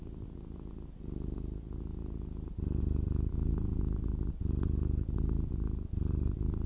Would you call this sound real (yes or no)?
yes